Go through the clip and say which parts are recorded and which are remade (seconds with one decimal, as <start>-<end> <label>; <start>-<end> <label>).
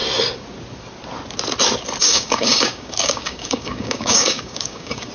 0.0-2.0 recorded; 2.0-5.1 remade